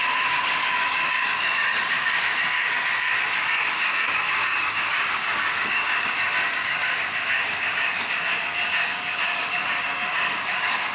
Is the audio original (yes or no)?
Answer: no